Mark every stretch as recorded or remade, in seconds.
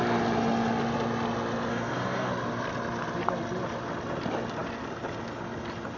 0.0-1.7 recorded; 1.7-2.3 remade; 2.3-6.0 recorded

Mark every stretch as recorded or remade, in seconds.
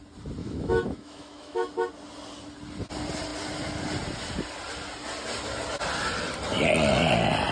0.0-0.4 recorded; 0.4-1.7 remade; 1.7-7.5 recorded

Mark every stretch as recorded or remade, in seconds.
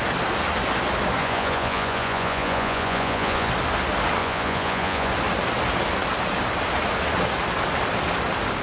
0.0-1.2 recorded; 1.2-3.5 remade; 3.5-4.2 recorded; 4.2-5.1 remade; 5.1-8.6 recorded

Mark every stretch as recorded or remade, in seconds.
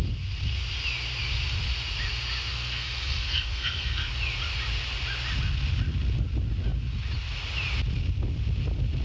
0.0-2.5 recorded; 2.5-4.1 remade; 4.1-9.0 recorded